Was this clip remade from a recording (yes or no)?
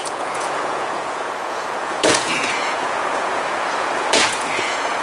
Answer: yes